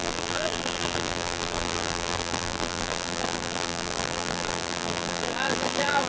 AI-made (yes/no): yes